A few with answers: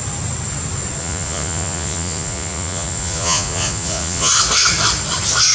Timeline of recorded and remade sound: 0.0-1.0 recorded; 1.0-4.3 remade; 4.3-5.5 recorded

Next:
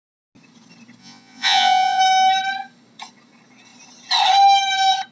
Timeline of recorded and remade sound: 0.0-1.0 recorded; 1.0-2.0 remade; 2.0-5.1 recorded

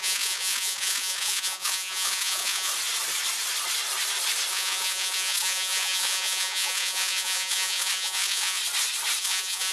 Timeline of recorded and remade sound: 0.0-2.7 remade; 2.7-4.5 recorded; 4.5-8.6 remade; 8.6-9.2 recorded; 9.2-9.7 remade